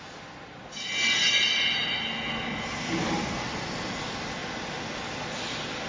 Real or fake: real